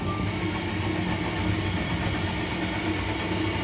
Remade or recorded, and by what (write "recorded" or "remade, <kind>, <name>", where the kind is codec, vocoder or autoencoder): recorded